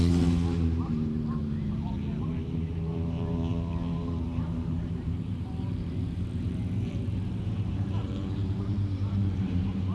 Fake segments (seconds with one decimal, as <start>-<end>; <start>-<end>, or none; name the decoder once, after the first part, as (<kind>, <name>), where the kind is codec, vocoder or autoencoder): 0.0-9.9 (vocoder, BigVGAN v2)